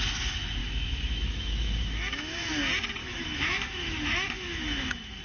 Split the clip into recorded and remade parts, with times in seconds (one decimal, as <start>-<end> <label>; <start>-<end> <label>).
0.0-0.6 recorded; 0.6-2.5 remade; 2.5-3.0 recorded; 3.0-5.2 remade